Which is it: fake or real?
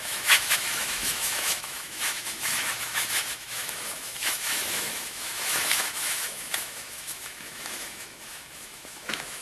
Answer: fake